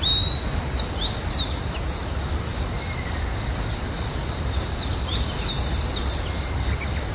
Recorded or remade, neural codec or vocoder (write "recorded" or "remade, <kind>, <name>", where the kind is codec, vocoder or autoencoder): recorded